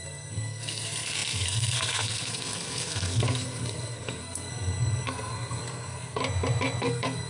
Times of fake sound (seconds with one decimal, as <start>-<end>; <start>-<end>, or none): 0.0-6.2; 6.8-7.3